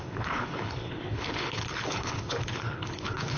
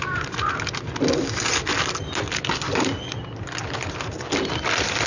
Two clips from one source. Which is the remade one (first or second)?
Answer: first